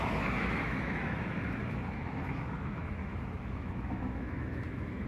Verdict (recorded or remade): remade